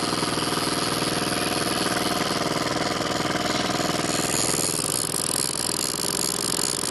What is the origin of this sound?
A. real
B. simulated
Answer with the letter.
A